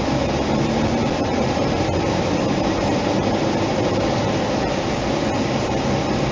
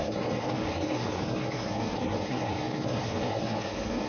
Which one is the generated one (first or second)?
second